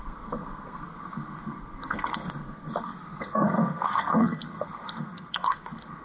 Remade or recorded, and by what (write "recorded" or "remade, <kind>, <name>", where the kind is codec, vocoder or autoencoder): remade, codec, SNAC